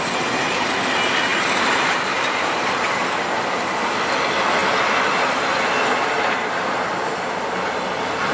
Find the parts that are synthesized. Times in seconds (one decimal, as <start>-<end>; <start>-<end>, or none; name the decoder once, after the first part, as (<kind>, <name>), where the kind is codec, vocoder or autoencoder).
1.3-3.2 (vocoder, BigVGAN v2)